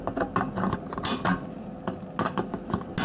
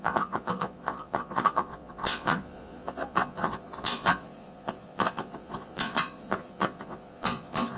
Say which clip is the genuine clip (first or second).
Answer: first